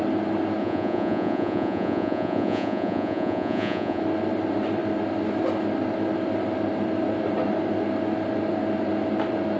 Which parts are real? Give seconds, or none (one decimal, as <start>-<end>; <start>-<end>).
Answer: 0.0-0.6; 4.0-9.6